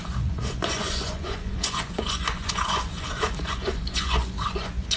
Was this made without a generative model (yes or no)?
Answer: no